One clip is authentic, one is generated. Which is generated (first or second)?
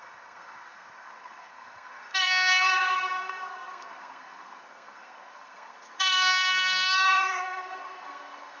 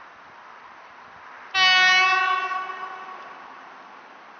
first